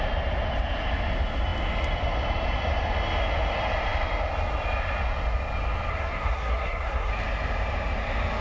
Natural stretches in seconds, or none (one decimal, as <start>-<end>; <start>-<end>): 0.0-5.9; 7.1-8.4